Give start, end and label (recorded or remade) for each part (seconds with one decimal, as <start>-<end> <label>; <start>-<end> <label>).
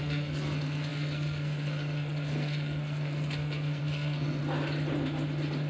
0.0-4.4 remade; 4.4-5.7 recorded